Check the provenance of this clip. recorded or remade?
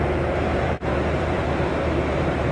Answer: remade